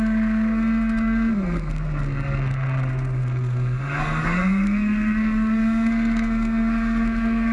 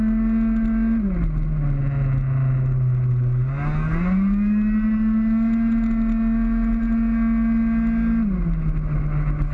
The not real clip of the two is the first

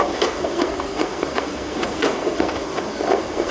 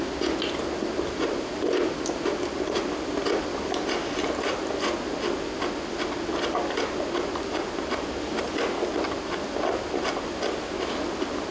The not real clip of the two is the first